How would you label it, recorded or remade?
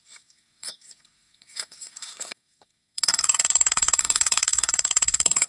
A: remade